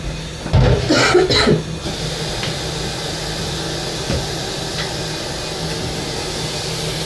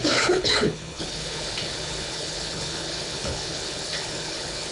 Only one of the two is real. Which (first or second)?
first